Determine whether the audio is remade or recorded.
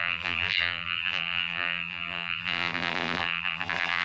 remade